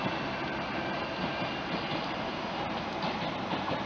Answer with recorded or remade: recorded